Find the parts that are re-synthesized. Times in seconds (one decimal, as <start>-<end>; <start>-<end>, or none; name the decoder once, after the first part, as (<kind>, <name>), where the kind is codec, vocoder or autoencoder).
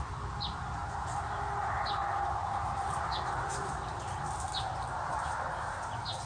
2.0-5.8 (vocoder, BigVGAN v2)